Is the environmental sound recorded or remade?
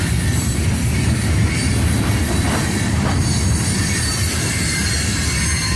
recorded